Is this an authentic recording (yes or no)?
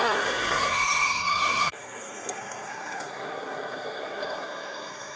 no